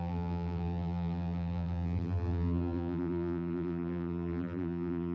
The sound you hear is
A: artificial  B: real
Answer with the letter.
A